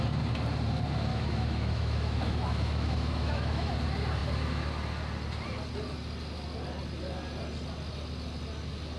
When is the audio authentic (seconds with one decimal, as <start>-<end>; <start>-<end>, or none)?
0.0-1.1; 3.7-9.0